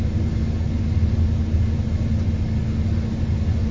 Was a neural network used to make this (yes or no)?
no